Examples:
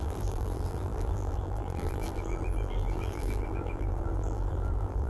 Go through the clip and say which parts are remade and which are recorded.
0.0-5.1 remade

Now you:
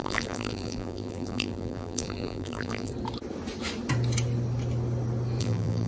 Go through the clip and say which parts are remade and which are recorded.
0.0-2.9 remade; 2.9-5.4 recorded; 5.4-5.9 remade

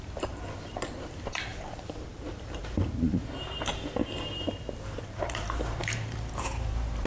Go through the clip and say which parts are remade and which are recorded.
0.0-3.7 remade; 3.7-5.0 recorded; 5.0-7.1 remade

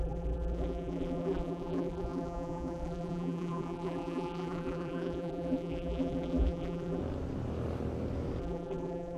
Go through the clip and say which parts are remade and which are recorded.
0.0-7.0 remade; 7.0-8.4 recorded; 8.4-9.2 remade

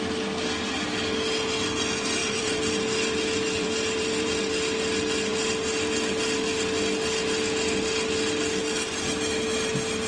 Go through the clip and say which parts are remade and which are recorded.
0.0-2.2 recorded; 2.2-4.4 remade; 4.4-10.1 recorded

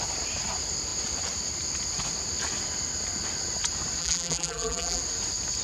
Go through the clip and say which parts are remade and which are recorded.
0.0-4.0 recorded; 4.0-5.0 remade; 5.0-5.6 recorded

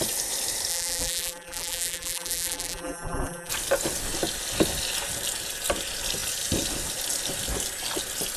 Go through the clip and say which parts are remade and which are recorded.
0.0-0.7 recorded; 0.7-3.5 remade; 3.5-8.4 recorded

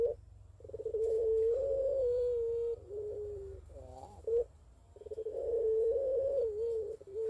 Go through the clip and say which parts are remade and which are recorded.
0.0-4.8 remade; 4.8-5.4 recorded; 5.4-7.3 remade